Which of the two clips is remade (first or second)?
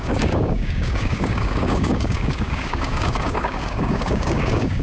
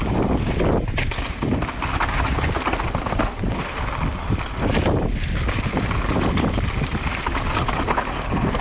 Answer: first